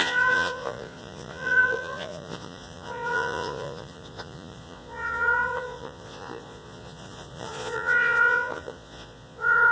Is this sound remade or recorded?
remade